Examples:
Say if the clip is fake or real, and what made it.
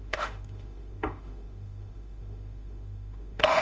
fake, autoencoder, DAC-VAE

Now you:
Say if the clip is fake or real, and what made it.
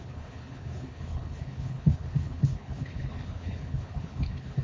fake, codec, HILCodec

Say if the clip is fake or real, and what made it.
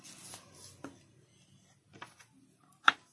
real